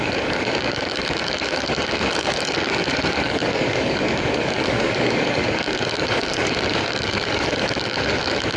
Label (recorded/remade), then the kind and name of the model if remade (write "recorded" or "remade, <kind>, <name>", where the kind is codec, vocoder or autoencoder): remade, codec, DAC